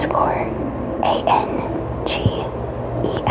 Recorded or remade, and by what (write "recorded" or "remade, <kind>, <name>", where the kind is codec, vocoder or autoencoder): recorded